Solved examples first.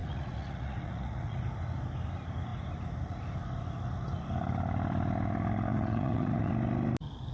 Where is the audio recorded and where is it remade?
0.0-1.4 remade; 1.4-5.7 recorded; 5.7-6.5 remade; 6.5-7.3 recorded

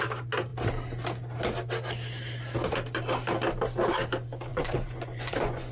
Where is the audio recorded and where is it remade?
0.0-4.5 recorded; 4.5-5.7 remade

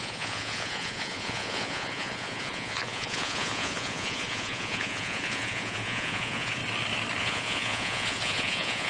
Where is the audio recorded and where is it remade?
0.0-6.6 remade; 6.6-7.2 recorded; 7.2-8.9 remade

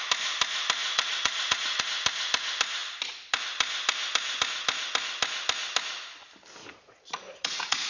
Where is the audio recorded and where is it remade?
0.0-0.8 recorded; 0.8-1.8 remade; 1.8-6.6 recorded; 6.6-7.9 remade